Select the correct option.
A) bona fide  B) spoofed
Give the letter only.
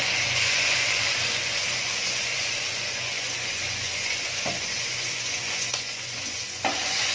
B